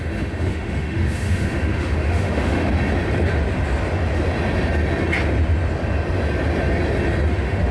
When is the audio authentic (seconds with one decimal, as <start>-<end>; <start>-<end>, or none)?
2.7-7.3